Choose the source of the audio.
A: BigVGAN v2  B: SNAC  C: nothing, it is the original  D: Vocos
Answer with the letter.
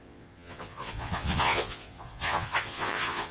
D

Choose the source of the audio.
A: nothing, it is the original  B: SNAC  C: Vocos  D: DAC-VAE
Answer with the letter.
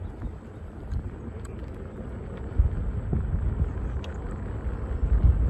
A